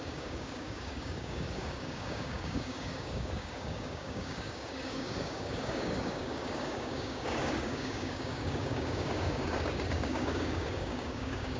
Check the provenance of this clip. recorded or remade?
remade